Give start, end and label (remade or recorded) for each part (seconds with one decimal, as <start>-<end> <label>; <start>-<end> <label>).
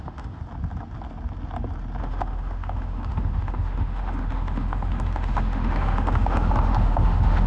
0.0-0.4 remade; 0.4-2.0 recorded; 2.0-7.5 remade